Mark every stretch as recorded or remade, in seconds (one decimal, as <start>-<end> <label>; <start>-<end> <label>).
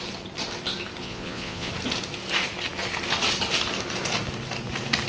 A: 0.0-1.0 recorded; 1.0-1.7 remade; 1.7-5.1 recorded